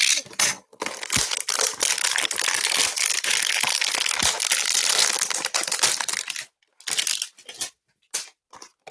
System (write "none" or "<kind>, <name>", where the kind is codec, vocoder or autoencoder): none